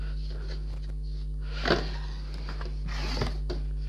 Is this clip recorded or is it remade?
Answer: recorded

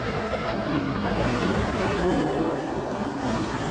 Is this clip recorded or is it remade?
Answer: remade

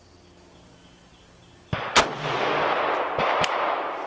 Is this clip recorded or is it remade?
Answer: recorded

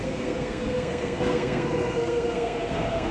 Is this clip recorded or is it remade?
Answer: remade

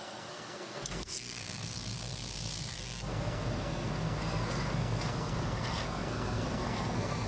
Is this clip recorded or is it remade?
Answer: remade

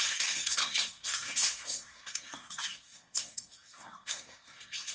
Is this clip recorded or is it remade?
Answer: remade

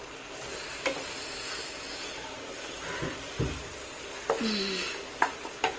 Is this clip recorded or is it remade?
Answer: recorded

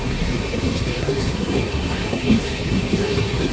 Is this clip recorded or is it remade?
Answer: remade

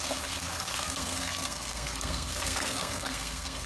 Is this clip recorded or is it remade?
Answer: remade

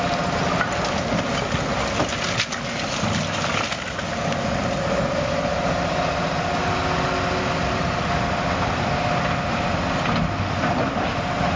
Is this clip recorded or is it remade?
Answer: recorded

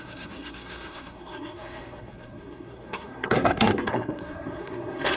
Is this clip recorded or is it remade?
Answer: remade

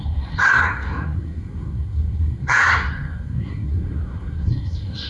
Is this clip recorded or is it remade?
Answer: remade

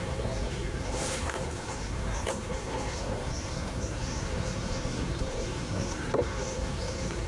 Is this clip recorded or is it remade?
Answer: remade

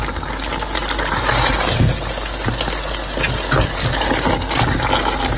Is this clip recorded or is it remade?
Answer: recorded